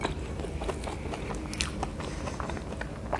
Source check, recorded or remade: recorded